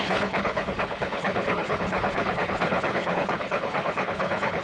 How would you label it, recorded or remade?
remade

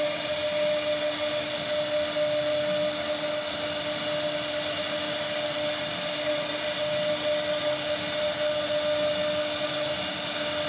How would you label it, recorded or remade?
recorded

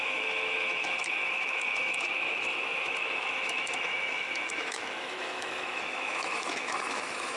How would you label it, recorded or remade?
remade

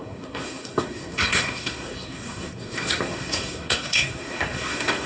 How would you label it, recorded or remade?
remade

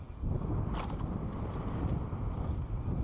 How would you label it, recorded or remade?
recorded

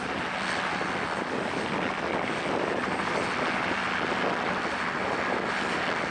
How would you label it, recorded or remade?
recorded